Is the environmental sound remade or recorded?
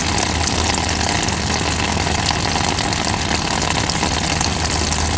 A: recorded